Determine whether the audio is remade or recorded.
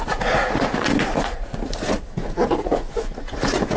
remade